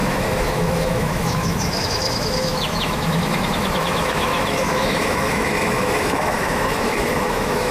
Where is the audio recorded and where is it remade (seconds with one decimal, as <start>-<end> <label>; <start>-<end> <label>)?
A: 0.0-7.7 remade